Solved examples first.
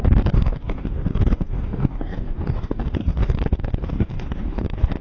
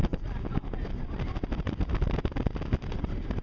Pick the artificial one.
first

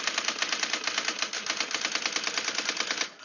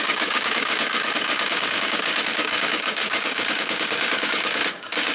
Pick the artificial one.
second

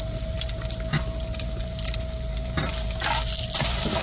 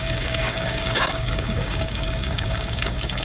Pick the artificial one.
second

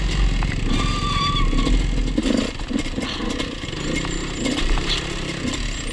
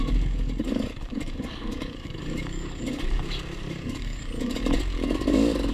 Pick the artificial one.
second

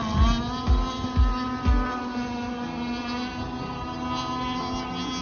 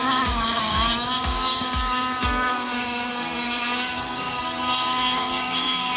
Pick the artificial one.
second